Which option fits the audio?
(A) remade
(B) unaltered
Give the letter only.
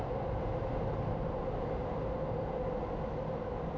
B